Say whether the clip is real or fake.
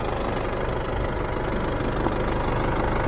real